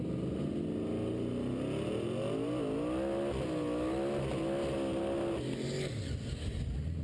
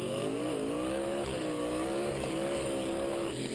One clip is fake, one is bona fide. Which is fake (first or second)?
second